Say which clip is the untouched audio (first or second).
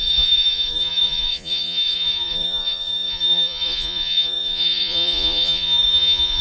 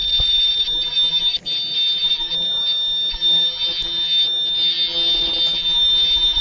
second